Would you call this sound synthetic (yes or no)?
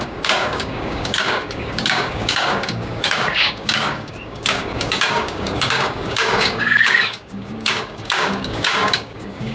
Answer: yes